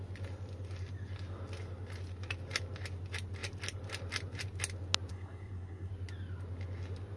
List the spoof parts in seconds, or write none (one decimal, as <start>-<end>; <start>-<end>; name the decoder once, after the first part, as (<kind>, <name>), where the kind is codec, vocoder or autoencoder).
5.1-5.9 (codec, SNAC)